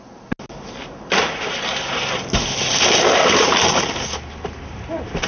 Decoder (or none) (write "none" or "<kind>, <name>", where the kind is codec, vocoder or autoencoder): none